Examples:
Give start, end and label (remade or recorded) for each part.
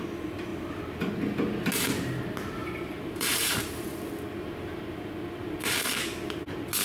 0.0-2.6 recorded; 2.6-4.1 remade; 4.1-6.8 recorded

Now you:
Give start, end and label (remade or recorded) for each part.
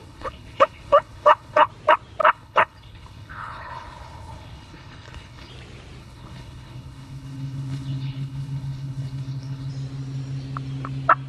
0.0-1.7 remade; 1.7-2.2 recorded; 2.2-5.5 remade; 5.5-6.0 recorded; 6.0-9.7 remade; 9.7-11.3 recorded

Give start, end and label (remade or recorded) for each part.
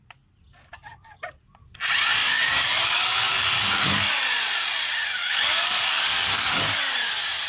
0.0-2.2 recorded; 2.2-3.5 remade; 3.5-5.2 recorded; 5.2-6.8 remade; 6.8-7.5 recorded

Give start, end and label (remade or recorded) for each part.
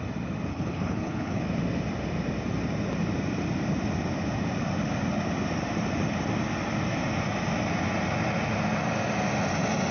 0.0-0.5 recorded; 0.5-1.4 remade; 1.4-9.9 recorded